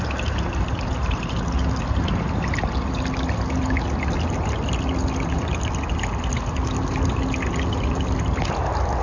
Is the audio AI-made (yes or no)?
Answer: no